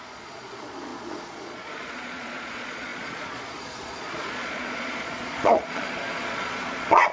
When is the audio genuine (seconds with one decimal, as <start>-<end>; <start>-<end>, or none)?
none